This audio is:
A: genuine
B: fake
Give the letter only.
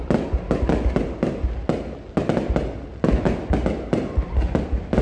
A